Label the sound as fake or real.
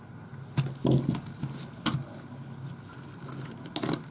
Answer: real